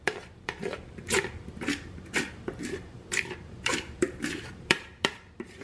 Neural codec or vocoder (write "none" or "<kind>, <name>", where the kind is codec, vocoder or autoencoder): vocoder, BigVGAN v2